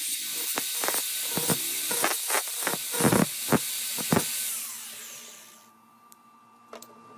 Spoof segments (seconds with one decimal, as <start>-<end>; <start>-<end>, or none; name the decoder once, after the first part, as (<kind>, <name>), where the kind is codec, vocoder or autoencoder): 0.8-2.3 (vocoder, BigVGAN v2)